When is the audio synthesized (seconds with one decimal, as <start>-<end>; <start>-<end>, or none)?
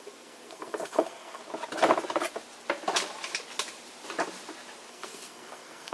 0.0-1.4; 4.9-5.9